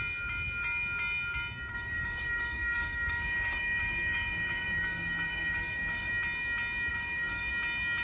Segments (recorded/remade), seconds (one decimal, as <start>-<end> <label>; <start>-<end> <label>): 0.0-1.7 recorded; 1.7-6.1 remade; 6.1-6.9 recorded; 6.9-7.5 remade; 7.5-8.0 recorded